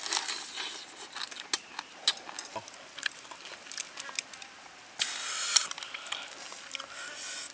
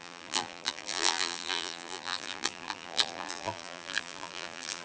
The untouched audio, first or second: first